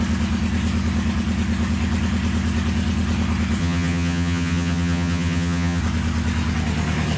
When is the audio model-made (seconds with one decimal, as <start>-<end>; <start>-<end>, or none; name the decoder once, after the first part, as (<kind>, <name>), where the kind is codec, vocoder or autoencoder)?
3.6-5.8 (vocoder, HiFi-GAN)